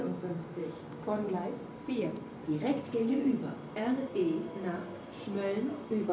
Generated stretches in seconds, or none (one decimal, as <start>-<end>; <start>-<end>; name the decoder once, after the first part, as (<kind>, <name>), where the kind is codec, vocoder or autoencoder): 0.6-1.3 (codec, DAC); 2.4-3.3